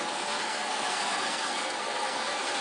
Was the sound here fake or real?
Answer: fake